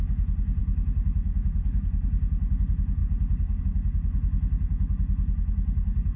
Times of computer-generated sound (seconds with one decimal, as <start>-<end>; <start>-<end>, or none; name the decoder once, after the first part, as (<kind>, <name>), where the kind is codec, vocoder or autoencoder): none